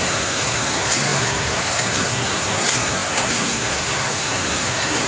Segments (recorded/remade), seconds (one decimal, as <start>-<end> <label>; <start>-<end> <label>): 0.0-5.1 remade